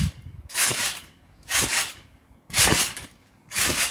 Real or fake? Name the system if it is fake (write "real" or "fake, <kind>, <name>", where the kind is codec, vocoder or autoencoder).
fake, codec, DAC